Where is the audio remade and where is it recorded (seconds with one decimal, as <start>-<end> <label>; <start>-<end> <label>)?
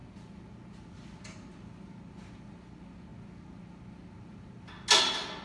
0.0-5.4 recorded